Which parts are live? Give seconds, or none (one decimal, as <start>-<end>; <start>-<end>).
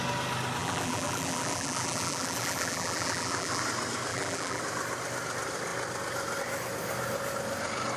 0.0-0.6; 3.6-4.1; 4.6-8.0